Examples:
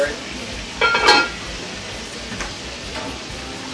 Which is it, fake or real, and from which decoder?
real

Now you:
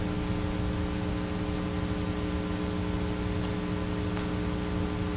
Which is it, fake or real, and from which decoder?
real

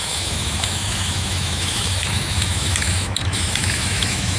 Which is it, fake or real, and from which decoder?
fake, autoencoder, DAC-VAE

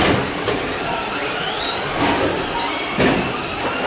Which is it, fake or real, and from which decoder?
real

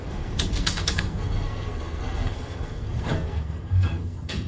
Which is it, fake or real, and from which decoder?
fake, codec, SNAC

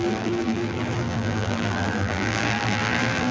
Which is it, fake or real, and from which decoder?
fake, vocoder, BigVGAN v2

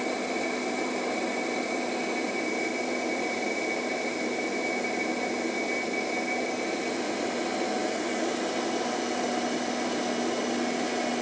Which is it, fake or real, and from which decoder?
real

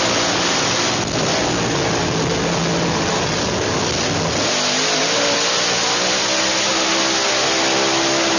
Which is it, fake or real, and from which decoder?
real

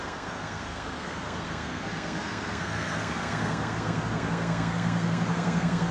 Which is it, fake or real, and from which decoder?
fake, codec, SNAC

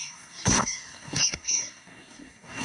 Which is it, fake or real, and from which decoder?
fake, codec, SNAC